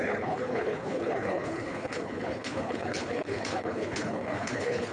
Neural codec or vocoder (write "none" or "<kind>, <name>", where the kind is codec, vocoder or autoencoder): codec, HILCodec